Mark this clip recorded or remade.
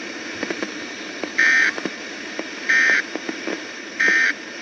remade